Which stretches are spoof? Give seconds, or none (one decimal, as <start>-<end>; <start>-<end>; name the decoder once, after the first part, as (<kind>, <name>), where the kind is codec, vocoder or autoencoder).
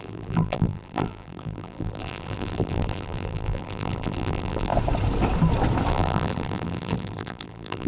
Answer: 0.0-4.7 (vocoder, BigVGAN v2); 5.9-7.9